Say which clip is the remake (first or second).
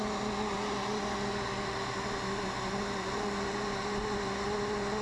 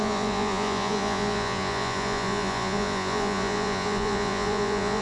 second